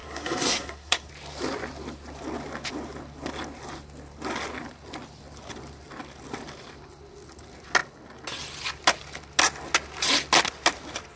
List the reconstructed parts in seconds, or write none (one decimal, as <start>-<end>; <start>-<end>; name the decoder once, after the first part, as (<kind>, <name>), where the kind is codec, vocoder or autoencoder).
0.0-1.1 (codec, SNAC)